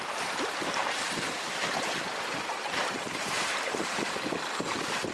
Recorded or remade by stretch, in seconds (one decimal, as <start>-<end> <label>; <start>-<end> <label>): 0.0-5.1 remade